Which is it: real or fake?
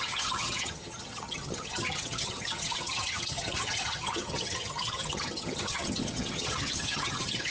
fake